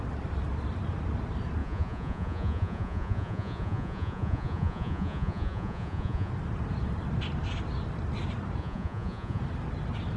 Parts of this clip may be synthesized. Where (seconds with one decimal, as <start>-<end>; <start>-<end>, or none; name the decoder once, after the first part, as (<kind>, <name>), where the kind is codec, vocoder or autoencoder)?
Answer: 1.6-6.3 (vocoder, Vocos); 8.6-9.4